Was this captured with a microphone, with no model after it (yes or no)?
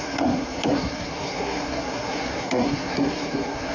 no